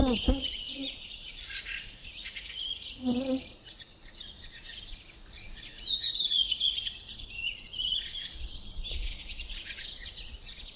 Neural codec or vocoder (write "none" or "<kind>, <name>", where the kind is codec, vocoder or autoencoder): vocoder, Vocos